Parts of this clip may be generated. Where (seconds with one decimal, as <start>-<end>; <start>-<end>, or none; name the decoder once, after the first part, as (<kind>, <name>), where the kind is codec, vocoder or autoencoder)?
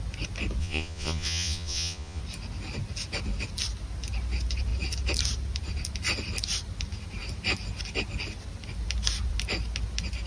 0.6-2.2 (vocoder, Vocos)